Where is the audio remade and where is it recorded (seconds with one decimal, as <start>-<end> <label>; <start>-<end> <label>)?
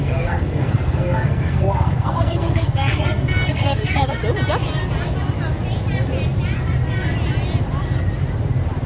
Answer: 0.0-4.2 remade; 4.2-8.9 recorded